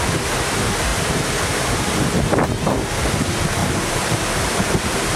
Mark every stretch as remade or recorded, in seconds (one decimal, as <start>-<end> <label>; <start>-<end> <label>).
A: 0.0-3.6 recorded; 3.6-5.2 remade